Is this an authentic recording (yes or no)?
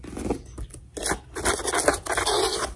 yes